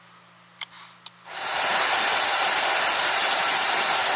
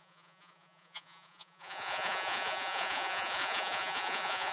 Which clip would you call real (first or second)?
first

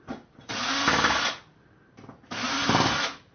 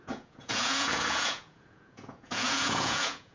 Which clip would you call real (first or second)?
first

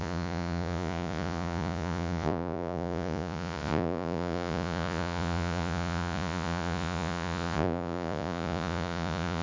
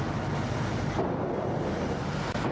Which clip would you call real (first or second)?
second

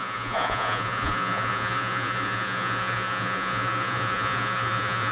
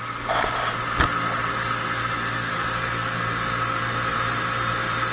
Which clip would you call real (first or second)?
second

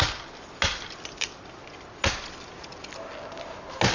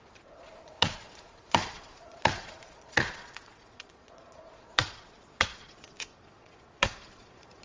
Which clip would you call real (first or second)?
first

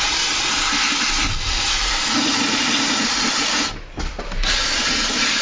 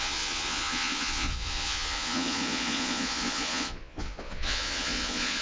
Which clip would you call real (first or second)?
first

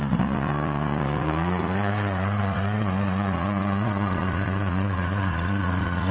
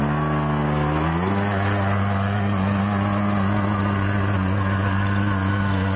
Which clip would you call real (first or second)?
second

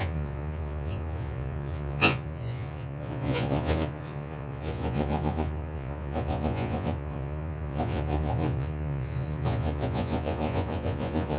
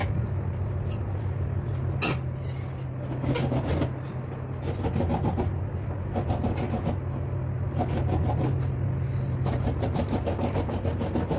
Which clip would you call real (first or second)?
second